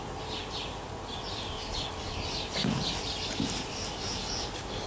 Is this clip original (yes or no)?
yes